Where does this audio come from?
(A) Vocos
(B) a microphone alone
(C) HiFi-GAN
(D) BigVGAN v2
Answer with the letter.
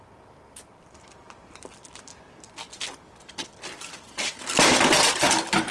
B